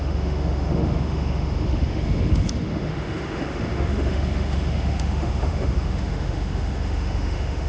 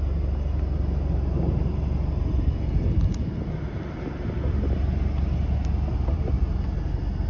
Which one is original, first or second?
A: second